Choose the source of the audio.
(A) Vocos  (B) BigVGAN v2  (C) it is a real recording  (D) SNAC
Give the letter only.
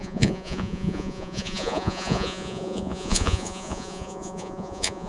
A